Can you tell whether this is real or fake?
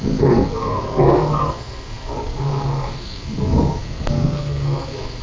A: fake